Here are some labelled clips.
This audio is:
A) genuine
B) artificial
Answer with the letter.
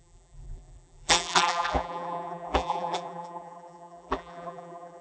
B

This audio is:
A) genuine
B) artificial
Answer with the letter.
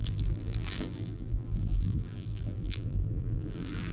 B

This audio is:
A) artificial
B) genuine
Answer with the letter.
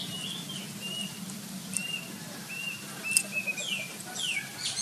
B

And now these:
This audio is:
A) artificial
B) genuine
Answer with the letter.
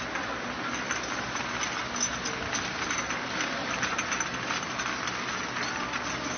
B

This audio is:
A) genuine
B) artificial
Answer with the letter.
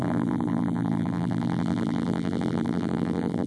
B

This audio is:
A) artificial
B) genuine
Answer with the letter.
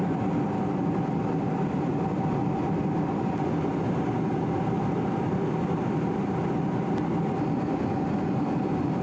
A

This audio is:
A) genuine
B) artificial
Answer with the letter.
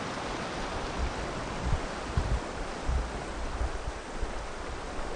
B